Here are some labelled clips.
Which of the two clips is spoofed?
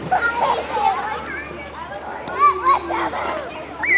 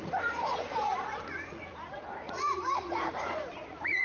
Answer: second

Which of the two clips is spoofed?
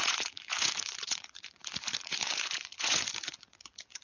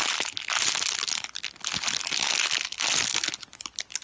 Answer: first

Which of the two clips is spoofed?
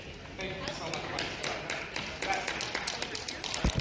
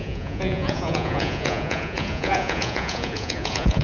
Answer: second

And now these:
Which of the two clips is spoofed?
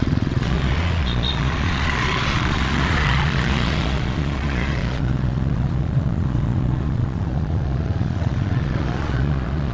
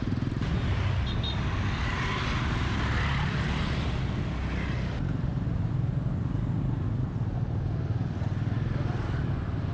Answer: first